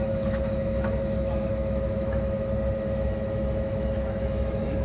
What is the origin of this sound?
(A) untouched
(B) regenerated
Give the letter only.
B